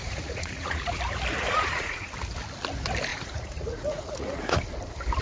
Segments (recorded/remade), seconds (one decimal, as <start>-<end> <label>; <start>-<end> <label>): 0.0-1.0 remade; 1.0-1.4 recorded; 1.4-2.1 remade; 2.1-3.1 recorded; 3.1-4.6 remade; 4.6-5.2 recorded